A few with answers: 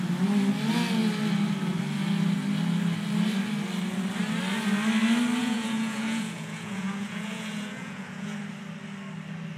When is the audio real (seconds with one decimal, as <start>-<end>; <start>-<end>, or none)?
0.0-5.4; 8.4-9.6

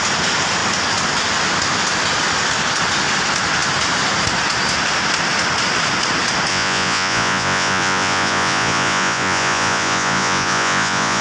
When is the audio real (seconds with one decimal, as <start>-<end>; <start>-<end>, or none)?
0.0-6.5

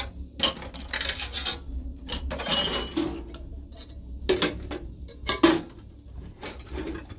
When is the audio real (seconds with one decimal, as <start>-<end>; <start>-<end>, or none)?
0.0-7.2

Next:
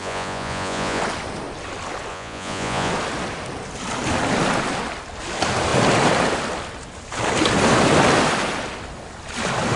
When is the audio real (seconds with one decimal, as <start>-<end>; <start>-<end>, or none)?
1.0-2.1; 2.9-9.8

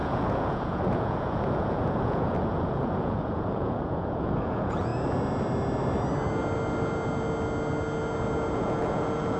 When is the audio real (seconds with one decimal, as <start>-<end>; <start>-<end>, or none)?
4.9-8.5

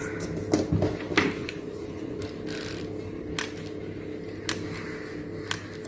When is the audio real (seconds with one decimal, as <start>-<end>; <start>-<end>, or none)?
0.0-1.4; 2.2-5.9